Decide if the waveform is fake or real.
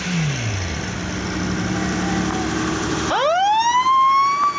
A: real